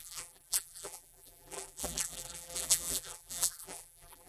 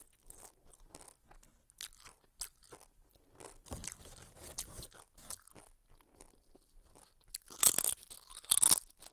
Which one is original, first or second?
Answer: second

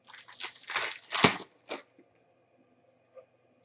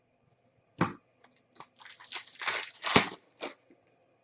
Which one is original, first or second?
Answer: first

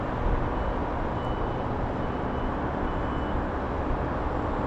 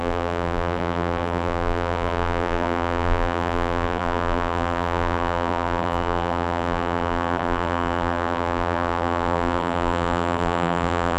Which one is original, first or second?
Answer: first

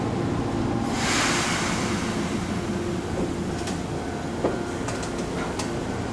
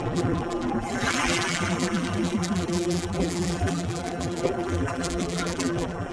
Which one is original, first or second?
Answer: first